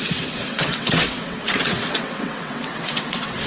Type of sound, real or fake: fake